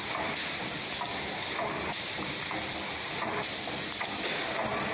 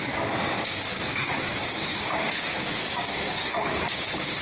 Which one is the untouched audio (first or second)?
first